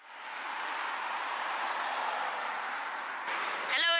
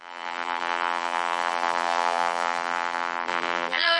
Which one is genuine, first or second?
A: first